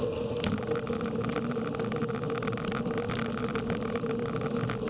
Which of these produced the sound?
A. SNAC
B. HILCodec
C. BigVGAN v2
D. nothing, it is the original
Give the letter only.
D